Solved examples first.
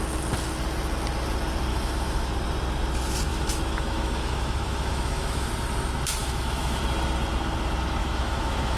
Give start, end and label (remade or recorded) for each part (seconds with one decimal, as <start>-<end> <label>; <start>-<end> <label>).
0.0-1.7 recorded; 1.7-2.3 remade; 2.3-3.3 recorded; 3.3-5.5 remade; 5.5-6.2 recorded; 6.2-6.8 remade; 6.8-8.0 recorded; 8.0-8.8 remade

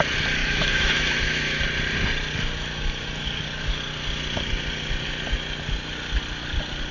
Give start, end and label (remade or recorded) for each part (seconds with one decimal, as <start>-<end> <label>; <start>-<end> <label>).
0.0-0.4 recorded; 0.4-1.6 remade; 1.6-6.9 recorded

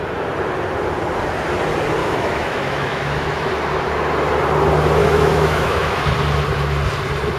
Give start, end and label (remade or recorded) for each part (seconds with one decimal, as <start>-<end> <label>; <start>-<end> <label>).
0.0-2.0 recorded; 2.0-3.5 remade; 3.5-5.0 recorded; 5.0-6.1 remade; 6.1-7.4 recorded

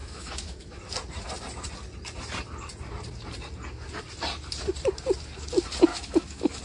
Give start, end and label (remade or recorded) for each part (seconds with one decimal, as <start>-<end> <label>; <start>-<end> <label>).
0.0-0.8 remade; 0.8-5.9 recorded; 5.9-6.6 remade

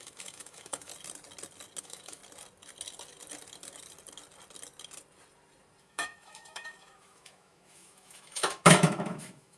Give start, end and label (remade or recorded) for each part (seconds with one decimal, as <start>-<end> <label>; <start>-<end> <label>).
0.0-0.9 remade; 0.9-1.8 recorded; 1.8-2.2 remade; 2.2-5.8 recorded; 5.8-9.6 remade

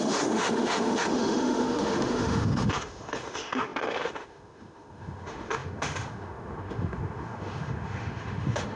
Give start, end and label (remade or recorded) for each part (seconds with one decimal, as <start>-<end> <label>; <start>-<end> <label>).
0.0-8.8 remade

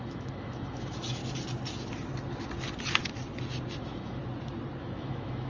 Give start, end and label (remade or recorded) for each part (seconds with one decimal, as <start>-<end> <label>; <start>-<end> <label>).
0.0-1.2 remade; 1.2-3.8 recorded; 3.8-4.2 remade; 4.2-4.8 recorded; 4.8-5.5 remade